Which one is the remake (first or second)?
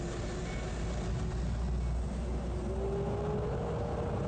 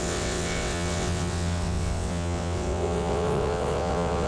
second